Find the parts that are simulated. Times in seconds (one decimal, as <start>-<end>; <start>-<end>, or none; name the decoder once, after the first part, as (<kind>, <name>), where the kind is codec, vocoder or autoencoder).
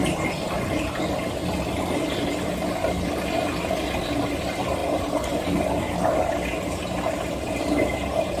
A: none